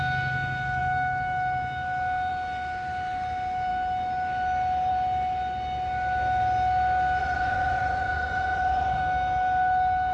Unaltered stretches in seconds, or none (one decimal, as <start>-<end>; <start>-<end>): 0.0-7.2; 9.0-10.1